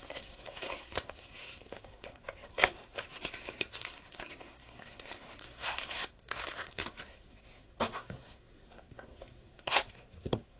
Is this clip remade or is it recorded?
remade